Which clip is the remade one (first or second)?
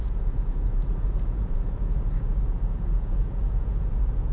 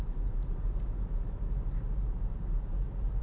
first